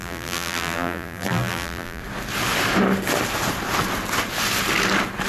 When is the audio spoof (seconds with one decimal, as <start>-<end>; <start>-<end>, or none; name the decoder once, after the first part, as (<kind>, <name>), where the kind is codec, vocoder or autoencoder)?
0.0-2.0 (vocoder, BigVGAN v2)